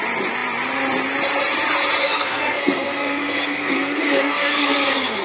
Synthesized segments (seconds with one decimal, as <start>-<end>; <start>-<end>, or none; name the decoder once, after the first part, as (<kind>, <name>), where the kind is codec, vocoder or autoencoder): 2.0-5.2 (codec, SNAC)